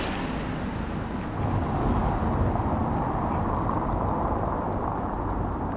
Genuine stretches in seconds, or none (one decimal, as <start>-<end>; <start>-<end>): 0.0-5.8